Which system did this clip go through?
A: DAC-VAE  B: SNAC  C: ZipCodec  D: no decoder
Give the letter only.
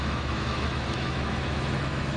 A